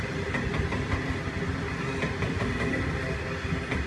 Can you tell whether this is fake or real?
real